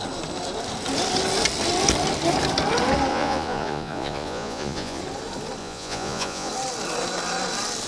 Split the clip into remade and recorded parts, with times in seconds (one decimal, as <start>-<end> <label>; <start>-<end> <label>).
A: 0.0-3.1 recorded; 3.1-5.0 remade; 5.0-5.6 recorded; 5.6-6.5 remade; 6.5-7.9 recorded